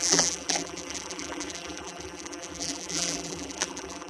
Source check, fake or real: fake